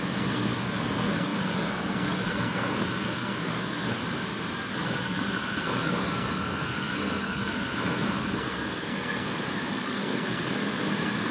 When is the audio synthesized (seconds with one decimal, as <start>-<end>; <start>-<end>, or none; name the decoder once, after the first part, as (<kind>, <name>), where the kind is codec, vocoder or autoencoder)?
0.0-4.0 (codec, SNAC); 4.7-11.3